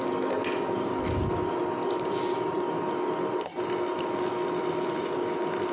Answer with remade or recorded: recorded